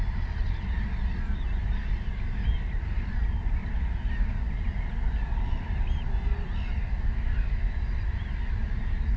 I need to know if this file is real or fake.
real